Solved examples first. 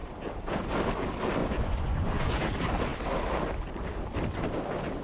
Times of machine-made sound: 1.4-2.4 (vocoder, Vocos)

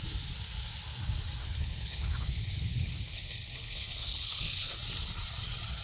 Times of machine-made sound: 1.4-4.7 (codec, HILCodec)

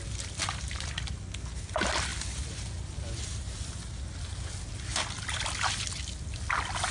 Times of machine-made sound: none

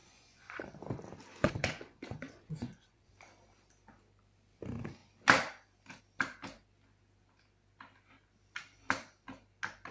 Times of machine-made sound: 0.0-0.8 (vocoder, Vocos); 1.3-3.1

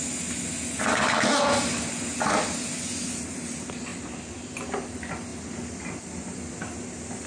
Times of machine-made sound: 3.9-4.7 (vocoder, BigVGAN v2); 5.3-6.5

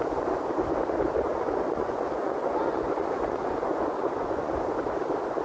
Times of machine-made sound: 1.3-4.5 (vocoder, Vocos)